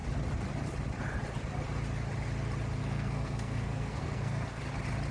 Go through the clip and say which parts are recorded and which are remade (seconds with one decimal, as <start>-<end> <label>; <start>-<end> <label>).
0.0-2.8 recorded; 2.8-4.6 remade; 4.6-5.1 recorded